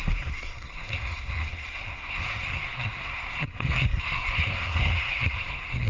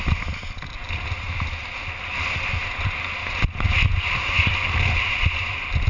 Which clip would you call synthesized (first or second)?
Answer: first